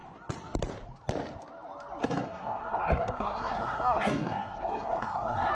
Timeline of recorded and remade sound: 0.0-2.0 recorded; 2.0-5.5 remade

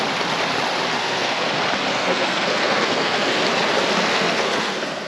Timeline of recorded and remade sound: 0.0-1.0 recorded; 1.0-1.5 remade; 1.5-1.9 recorded; 1.9-3.4 remade; 3.4-4.0 recorded; 4.0-5.1 remade

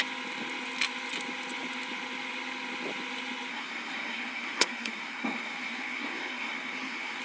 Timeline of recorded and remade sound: 0.0-3.5 recorded; 3.5-7.2 remade

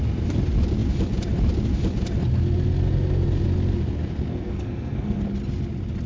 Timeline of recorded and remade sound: 0.0-4.3 recorded; 4.3-5.2 remade; 5.2-6.1 recorded

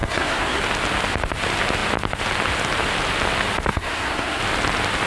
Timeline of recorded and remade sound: 0.0-0.6 remade; 0.6-3.7 recorded; 3.7-4.4 remade; 4.4-5.1 recorded

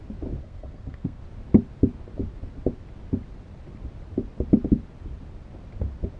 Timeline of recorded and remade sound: 0.0-0.4 recorded; 0.4-1.2 remade; 1.2-6.2 recorded

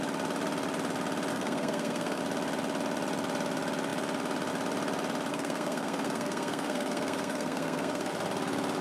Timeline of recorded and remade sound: 0.0-1.3 recorded; 1.3-2.2 remade; 2.2-5.3 recorded; 5.3-8.1 remade; 8.1-8.8 recorded